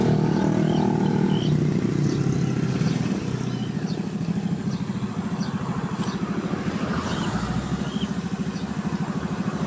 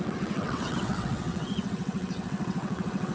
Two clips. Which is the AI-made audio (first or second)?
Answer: second